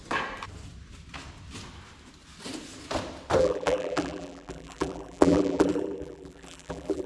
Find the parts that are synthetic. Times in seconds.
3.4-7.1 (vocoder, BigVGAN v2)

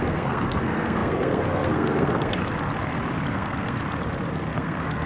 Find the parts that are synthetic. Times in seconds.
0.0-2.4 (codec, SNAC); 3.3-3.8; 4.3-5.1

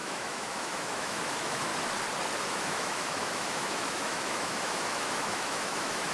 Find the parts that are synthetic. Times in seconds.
0.0-1.7 (autoencoder, DAC-VAE); 2.4-6.1

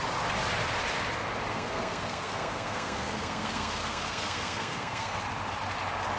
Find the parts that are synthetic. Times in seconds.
1.5-5.2 (codec, SNAC)